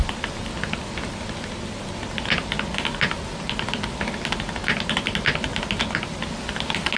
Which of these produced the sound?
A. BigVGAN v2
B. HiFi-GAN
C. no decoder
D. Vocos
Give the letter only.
C